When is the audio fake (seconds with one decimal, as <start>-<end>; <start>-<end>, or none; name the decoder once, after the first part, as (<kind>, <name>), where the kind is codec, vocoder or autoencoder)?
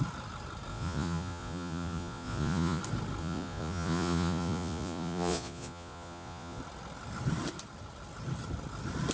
0.7-2.8 (vocoder, Vocos); 3.2-6.6